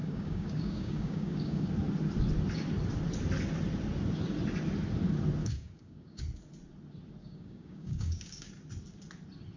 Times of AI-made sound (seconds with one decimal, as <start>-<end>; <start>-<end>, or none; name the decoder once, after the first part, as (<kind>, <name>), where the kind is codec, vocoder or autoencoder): 0.0-1.7 (codec, DAC); 5.4-6.2; 7.2-8.5